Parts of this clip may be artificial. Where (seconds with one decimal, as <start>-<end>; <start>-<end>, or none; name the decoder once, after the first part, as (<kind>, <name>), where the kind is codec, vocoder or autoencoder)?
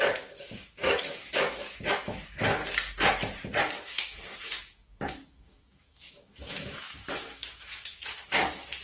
0.0-2.6 (autoencoder, DAC-VAE); 3.6-8.8